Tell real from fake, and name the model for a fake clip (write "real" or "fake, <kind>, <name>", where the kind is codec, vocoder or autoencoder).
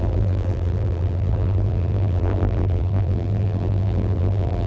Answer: fake, vocoder, BigVGAN v2